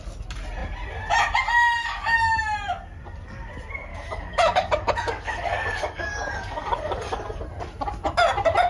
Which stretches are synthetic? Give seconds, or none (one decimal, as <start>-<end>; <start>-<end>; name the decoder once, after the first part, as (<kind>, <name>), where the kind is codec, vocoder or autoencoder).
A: 1.8-2.4 (codec, DAC); 3.9-7.4